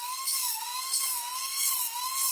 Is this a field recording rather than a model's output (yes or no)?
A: no